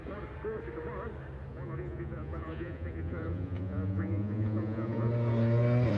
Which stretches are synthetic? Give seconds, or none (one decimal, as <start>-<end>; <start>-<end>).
1.5-5.1